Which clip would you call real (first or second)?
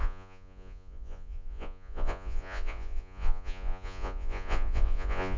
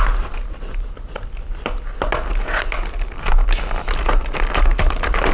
second